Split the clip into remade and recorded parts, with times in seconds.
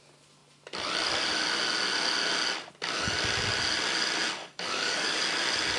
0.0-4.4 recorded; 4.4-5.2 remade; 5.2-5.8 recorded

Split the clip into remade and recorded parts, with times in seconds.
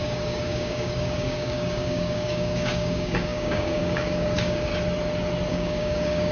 0.0-4.7 remade; 4.7-5.5 recorded; 5.5-6.3 remade